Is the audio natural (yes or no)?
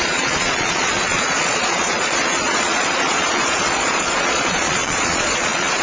no